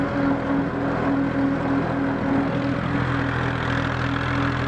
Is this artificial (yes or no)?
no